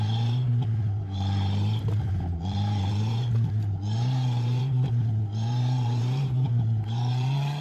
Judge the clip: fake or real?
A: fake